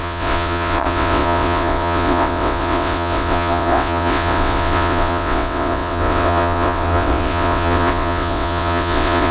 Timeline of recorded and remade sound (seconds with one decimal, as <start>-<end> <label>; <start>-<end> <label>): 0.0-9.3 remade